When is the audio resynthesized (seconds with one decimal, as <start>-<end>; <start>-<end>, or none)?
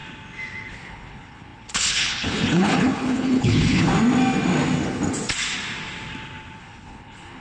0.7-3.9; 6.6-7.4